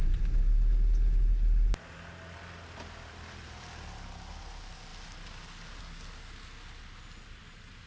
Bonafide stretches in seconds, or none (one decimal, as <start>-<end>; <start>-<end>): 0.0-7.9